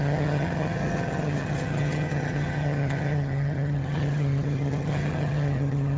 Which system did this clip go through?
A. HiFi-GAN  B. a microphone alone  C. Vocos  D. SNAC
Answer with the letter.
A